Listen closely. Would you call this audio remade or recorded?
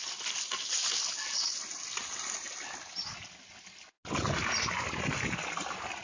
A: recorded